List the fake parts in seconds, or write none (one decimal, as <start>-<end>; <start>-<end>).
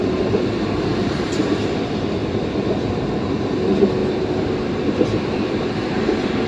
0.0-2.2; 3.0-6.5